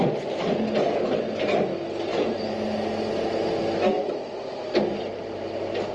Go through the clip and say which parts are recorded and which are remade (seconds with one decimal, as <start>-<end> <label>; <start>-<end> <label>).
0.0-5.9 recorded